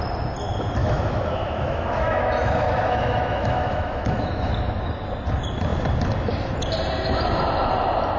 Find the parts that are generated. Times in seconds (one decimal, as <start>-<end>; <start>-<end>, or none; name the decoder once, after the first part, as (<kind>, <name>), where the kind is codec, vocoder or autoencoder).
0.8-4.5 (autoencoder, DAC-VAE)